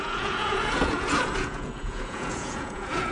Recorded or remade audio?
remade